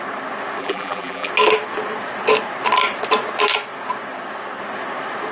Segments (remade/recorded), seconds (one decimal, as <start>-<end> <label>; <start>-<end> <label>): 0.0-0.6 recorded; 0.6-1.3 remade; 1.3-5.3 recorded